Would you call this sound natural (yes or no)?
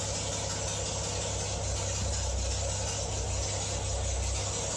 yes